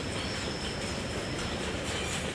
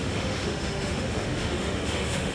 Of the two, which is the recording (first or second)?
first